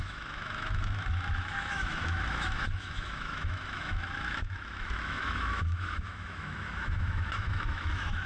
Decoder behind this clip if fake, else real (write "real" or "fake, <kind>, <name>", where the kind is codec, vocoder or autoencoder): fake, autoencoder, DAC-VAE